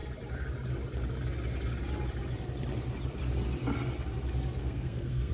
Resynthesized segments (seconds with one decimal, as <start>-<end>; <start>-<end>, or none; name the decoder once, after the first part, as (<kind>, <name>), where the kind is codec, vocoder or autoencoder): 4.6-5.3 (codec, SNAC)